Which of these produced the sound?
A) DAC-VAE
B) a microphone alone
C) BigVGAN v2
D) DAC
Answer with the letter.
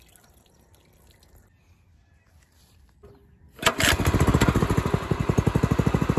B